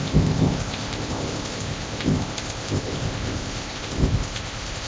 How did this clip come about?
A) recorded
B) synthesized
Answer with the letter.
B